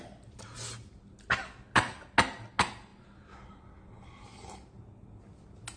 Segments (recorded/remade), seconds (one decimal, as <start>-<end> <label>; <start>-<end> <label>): 0.0-5.8 recorded